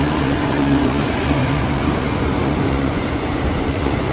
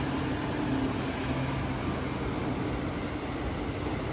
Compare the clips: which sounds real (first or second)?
second